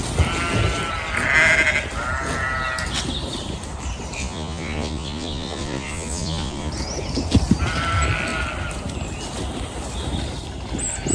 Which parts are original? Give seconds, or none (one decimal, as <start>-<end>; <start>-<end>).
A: 0.0-4.2; 6.7-11.1